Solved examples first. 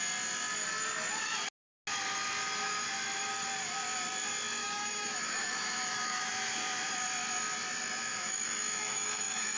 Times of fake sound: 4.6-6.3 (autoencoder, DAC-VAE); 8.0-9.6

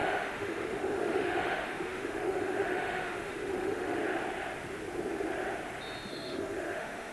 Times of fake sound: 0.0-4.0 (autoencoder, DAC-VAE); 6.1-7.1

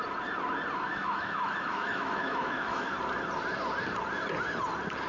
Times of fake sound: 0.9-2.9 (autoencoder, DAC-VAE)